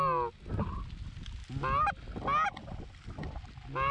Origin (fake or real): real